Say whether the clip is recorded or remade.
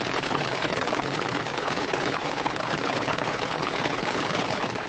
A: remade